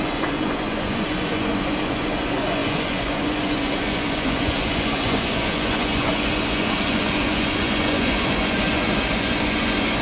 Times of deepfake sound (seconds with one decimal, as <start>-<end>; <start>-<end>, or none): 0.0-10.0